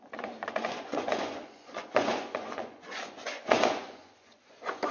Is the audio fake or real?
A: fake